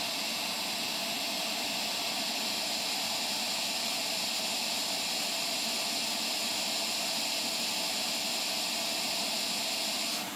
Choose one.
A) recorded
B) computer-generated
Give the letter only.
A